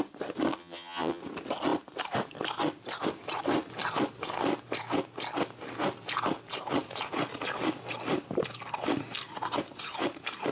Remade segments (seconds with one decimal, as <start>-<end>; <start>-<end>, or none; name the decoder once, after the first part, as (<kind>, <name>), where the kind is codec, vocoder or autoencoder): 0.6-1.2 (vocoder, HiFi-GAN)